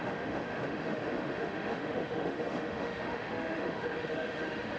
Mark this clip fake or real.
fake